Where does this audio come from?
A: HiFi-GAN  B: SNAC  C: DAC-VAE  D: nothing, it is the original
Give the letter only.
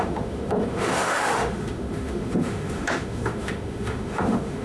C